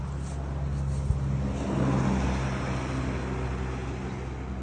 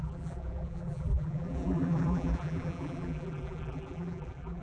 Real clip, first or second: first